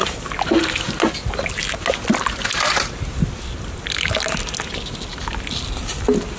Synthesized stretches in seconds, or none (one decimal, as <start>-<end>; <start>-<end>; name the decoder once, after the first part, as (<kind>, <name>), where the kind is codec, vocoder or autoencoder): 5.1-5.8 (vocoder, BigVGAN v2)